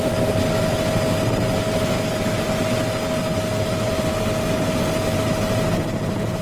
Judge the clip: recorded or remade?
recorded